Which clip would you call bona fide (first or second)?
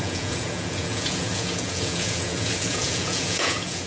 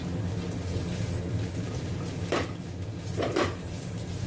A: second